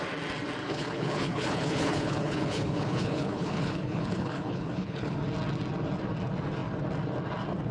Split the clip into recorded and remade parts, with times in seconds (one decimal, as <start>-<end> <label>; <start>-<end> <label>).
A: 0.0-0.6 recorded; 0.6-5.2 remade; 5.2-7.7 recorded